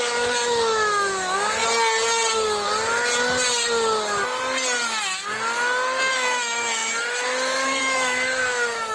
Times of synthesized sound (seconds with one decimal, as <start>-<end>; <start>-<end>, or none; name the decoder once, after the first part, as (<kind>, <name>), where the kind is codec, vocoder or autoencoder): 0.0-1.6 (autoencoder, DAC-VAE); 6.1-8.9